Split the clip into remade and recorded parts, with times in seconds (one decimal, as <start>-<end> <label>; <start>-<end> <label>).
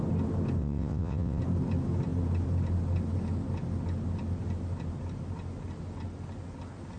0.0-0.6 recorded; 0.6-1.4 remade; 1.4-7.0 recorded